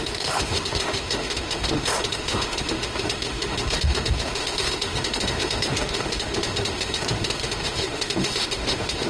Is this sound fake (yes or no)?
yes